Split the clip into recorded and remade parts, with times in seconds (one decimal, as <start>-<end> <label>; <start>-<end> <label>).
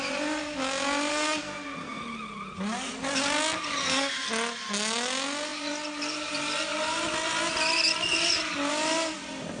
0.0-1.1 recorded; 1.1-2.0 remade; 2.0-3.8 recorded; 3.8-4.3 remade; 4.3-9.6 recorded